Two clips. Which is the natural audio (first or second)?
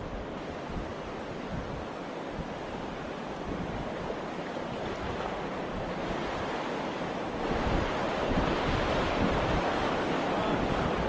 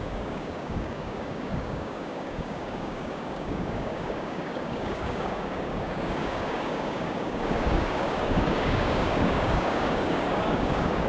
first